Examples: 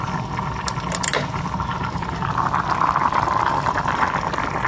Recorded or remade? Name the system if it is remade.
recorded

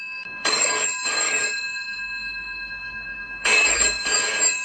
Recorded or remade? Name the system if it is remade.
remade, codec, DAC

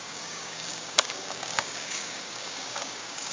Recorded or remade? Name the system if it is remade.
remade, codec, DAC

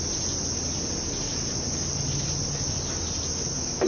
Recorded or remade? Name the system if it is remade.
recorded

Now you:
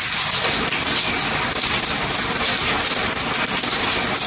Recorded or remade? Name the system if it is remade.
recorded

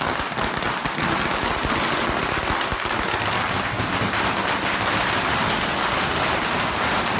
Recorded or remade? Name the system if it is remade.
recorded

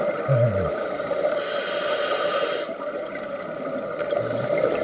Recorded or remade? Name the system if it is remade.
recorded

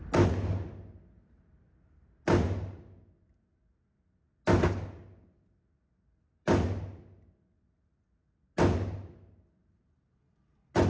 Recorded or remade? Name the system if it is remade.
recorded